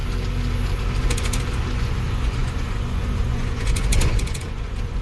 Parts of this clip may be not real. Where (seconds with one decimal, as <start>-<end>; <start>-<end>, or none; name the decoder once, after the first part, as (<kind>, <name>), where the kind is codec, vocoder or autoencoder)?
1.0-5.0 (vocoder, Vocos)